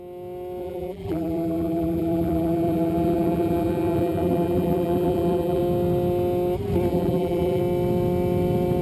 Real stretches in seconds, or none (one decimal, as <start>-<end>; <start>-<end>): 0.0-0.6; 5.6-6.9; 7.6-8.8